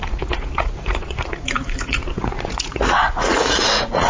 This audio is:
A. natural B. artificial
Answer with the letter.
B